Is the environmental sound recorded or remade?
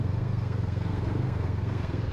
remade